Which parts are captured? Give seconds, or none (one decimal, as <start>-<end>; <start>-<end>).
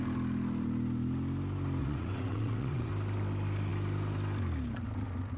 0.0-1.8; 2.9-5.4